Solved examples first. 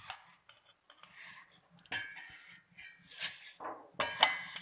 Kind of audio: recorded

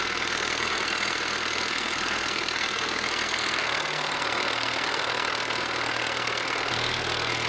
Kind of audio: remade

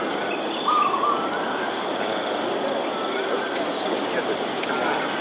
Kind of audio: recorded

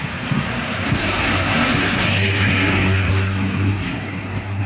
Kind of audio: remade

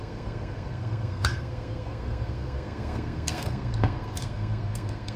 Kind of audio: remade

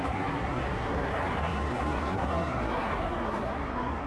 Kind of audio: remade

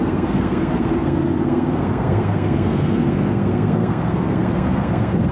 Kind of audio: remade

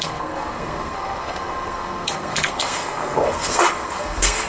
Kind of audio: remade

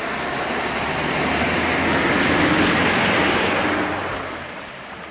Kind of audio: recorded